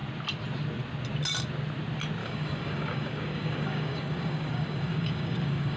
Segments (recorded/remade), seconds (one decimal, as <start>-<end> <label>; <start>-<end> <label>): 0.0-2.2 recorded; 2.2-5.8 remade